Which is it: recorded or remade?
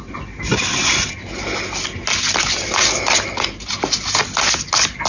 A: recorded